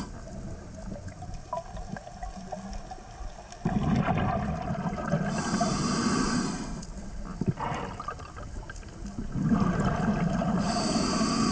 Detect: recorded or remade recorded